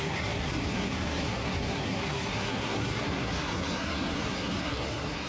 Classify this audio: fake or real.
fake